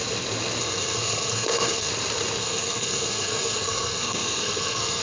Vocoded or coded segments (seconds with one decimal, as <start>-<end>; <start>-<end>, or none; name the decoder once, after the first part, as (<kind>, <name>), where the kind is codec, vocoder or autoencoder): 0.6-1.9 (codec, SNAC); 2.4-5.0